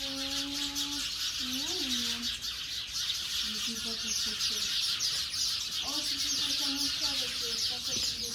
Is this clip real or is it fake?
real